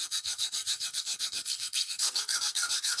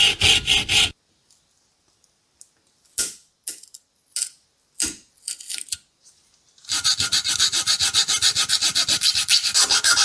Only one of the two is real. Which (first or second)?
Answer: second